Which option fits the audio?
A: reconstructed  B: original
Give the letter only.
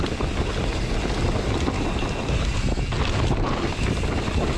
B